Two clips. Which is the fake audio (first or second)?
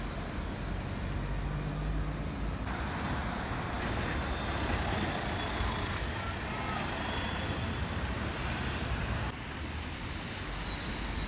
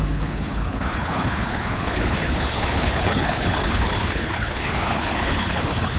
second